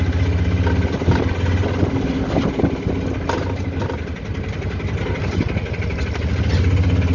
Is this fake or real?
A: real